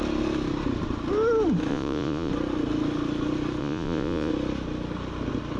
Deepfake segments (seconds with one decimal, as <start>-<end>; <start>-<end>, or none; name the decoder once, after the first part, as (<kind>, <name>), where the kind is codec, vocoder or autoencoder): 1.7-2.3 (vocoder, Vocos); 3.6-4.3